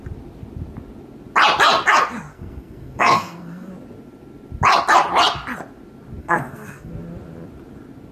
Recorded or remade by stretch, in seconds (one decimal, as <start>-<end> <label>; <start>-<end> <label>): 0.0-2.3 recorded; 2.3-3.7 remade; 3.7-6.2 recorded; 6.2-6.9 remade; 6.9-8.1 recorded